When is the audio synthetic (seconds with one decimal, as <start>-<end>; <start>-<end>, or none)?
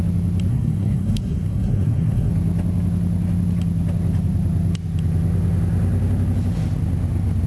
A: 0.5-2.3